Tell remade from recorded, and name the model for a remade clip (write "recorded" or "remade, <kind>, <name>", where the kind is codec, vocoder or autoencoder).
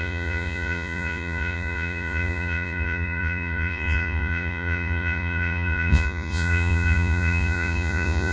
remade, vocoder, Vocos